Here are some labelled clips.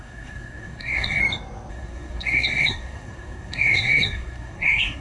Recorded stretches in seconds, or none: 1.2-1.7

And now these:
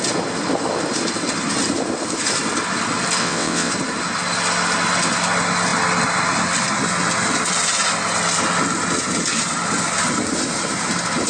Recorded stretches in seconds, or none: 0.0-3.2; 3.7-11.3

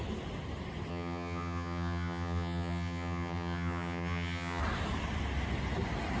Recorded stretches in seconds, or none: 0.0-0.9; 4.6-6.2

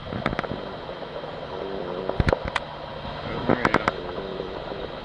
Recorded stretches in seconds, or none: 0.0-4.3

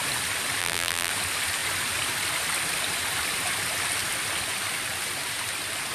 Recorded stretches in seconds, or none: 0.0-0.6; 1.1-5.9

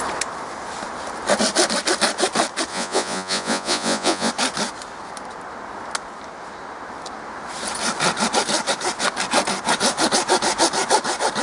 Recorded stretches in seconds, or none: 0.0-2.7; 4.3-11.4

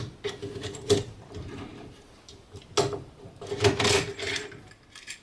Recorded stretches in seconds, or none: 0.0-5.2